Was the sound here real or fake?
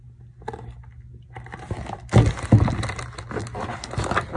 real